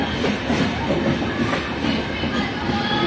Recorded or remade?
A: recorded